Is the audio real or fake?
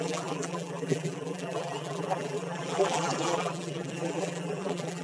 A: fake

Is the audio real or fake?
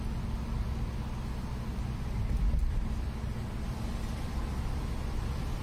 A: real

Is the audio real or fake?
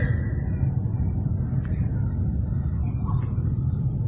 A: real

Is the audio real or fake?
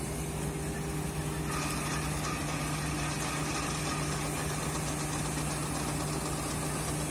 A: real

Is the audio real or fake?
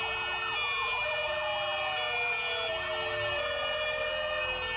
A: real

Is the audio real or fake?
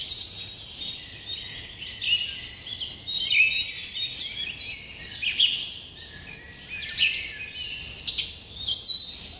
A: real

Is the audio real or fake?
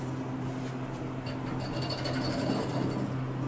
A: real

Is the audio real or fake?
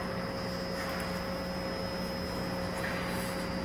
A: real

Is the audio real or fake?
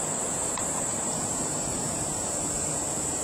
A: fake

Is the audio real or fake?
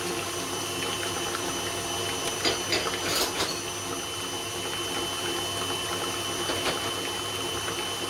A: real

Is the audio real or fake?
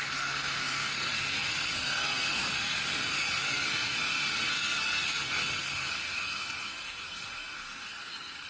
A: fake